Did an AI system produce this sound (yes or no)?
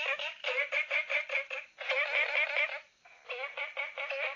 no